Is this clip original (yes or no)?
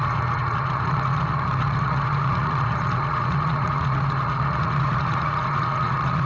no